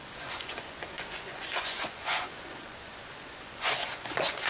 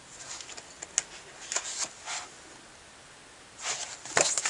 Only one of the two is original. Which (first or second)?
second